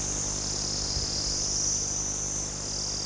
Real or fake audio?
real